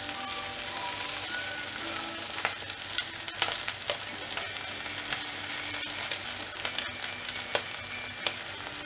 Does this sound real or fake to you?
real